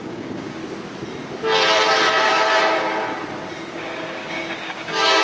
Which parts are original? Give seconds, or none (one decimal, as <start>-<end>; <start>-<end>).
0.6-3.7